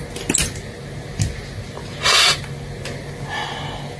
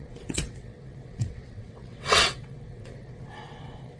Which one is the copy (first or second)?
second